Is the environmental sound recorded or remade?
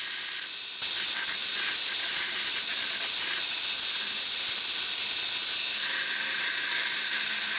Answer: recorded